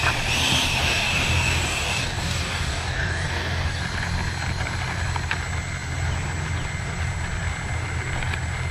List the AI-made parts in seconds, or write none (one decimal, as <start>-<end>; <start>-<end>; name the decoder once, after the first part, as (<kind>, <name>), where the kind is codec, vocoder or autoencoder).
0.8-3.8 (codec, DAC)